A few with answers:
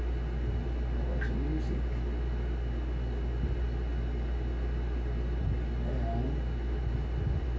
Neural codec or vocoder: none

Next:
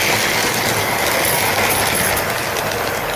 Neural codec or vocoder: none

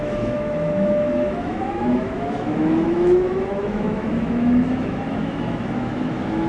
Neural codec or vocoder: autoencoder, DAC-VAE